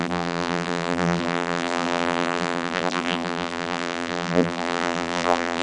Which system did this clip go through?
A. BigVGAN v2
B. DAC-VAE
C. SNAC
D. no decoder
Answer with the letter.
A